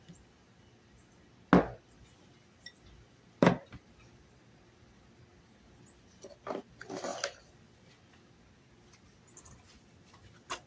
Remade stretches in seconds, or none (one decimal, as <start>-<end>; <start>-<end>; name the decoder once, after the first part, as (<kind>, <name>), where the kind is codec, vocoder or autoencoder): none